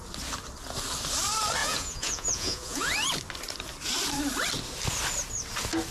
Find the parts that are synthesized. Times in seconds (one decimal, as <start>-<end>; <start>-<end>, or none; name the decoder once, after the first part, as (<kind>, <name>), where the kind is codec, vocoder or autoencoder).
1.6-2.9 (vocoder, Vocos)